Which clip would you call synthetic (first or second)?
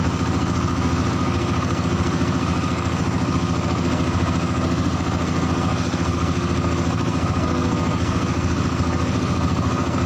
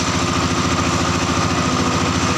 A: first